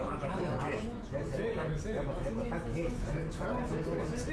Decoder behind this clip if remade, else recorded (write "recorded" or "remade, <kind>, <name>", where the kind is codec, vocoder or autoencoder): remade, autoencoder, DAC-VAE